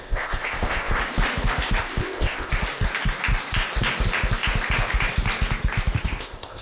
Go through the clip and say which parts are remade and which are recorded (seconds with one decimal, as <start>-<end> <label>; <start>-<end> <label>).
0.0-1.0 remade; 1.0-1.8 recorded; 1.8-2.5 remade; 2.5-6.0 recorded; 6.0-6.6 remade